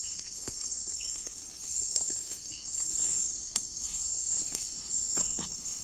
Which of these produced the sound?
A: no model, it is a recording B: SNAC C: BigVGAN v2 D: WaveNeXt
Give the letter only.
B